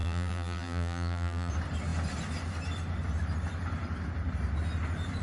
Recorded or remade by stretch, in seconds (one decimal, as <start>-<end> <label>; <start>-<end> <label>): 0.0-1.5 remade; 1.5-5.2 recorded